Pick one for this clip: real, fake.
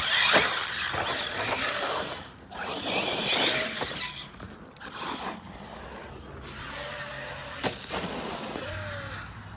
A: real